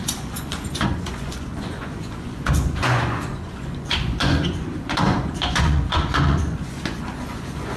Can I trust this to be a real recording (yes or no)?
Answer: no